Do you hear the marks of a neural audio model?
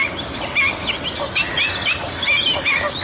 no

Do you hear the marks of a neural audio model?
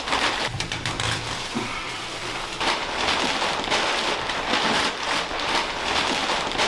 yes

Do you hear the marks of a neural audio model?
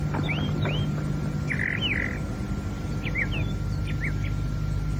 no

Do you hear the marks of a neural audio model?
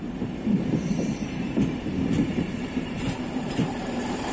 yes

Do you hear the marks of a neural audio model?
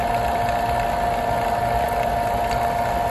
no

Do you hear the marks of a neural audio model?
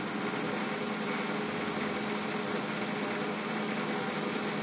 no